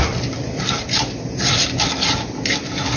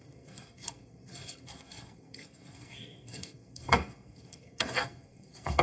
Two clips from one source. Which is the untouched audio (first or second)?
first